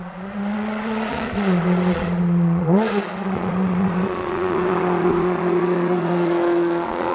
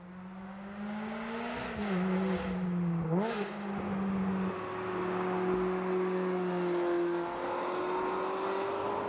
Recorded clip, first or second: second